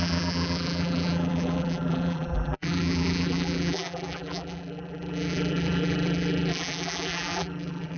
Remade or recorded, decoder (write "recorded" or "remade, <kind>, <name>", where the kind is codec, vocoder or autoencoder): remade, vocoder, BigVGAN v2